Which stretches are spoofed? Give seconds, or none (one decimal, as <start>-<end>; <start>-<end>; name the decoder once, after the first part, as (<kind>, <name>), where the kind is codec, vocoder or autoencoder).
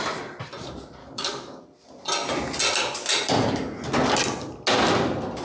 1.0-1.6 (codec, DAC)